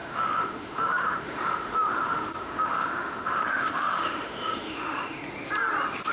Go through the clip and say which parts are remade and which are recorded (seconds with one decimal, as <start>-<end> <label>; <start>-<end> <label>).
0.0-5.2 remade; 5.2-6.1 recorded